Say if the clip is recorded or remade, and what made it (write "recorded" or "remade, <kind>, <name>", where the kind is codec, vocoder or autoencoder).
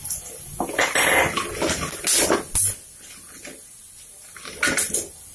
recorded